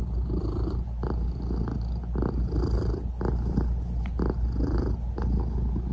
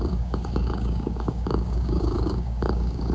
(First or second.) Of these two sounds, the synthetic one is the second